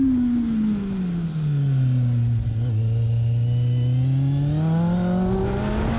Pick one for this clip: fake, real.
real